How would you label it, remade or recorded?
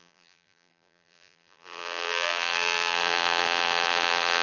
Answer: remade